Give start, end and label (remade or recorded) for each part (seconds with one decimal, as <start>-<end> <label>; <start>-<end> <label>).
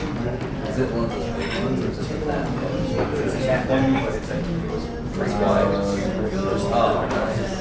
0.0-3.1 recorded; 3.1-3.7 remade; 3.7-7.6 recorded